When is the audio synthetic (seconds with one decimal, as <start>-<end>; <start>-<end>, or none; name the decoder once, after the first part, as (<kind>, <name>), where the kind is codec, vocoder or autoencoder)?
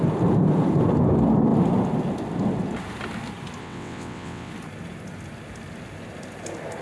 3.6-4.5 (vocoder, WaveNeXt)